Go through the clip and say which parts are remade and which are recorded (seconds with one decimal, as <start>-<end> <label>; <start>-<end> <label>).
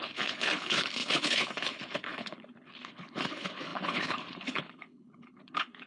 0.0-5.9 remade